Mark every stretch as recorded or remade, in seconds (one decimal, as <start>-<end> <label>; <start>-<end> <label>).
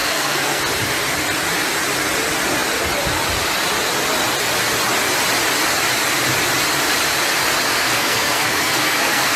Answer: 0.0-0.6 remade; 0.6-7.7 recorded; 7.7-9.4 remade